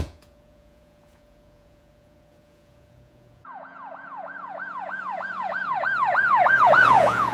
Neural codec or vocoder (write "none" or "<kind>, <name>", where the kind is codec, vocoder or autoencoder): vocoder, Vocos